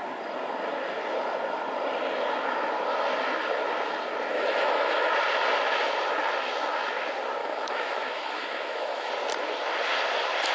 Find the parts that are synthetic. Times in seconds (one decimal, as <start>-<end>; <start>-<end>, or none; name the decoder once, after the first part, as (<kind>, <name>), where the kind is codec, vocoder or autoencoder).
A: 4.3-5.1 (autoencoder, DAC-VAE); 7.4-9.1